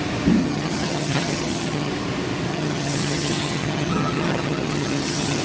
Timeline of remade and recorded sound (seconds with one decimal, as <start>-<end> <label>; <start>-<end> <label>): 0.0-0.4 recorded; 0.4-1.9 remade; 1.9-2.5 recorded; 2.5-5.4 remade